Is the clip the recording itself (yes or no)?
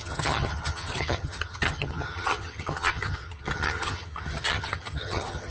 no